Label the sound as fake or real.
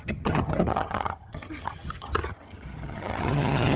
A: fake